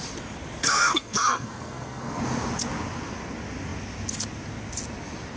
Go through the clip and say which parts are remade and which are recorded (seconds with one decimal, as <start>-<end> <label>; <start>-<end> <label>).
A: 0.0-0.6 recorded; 0.6-2.2 remade; 2.2-5.4 recorded